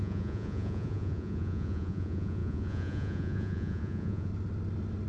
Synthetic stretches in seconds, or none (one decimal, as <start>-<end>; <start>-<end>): 0.0-4.3